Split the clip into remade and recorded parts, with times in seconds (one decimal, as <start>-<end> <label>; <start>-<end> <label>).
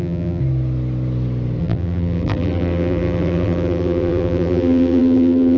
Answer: 0.0-0.4 remade; 0.4-1.6 recorded; 1.6-5.6 remade